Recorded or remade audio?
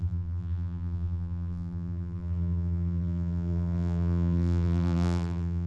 remade